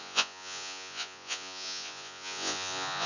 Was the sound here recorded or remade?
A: remade